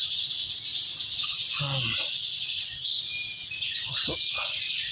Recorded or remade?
recorded